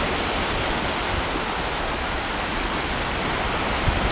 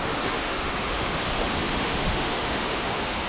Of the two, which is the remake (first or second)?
second